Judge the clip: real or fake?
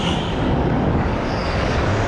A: fake